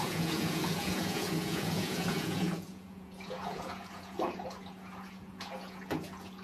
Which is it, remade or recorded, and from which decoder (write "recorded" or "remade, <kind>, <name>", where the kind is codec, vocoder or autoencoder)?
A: remade, vocoder, Vocos